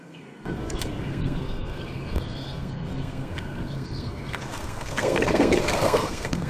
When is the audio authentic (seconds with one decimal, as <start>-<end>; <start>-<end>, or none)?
none